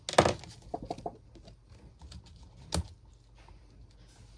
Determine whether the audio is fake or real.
real